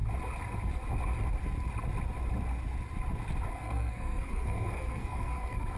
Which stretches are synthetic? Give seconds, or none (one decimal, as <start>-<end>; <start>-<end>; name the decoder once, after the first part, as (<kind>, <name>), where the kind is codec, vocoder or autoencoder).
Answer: 3.5-5.8 (codec, SNAC)